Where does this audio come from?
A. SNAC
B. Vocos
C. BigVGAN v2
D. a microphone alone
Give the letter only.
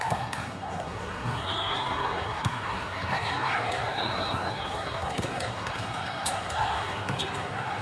A